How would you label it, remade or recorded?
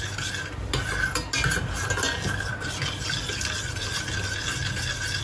recorded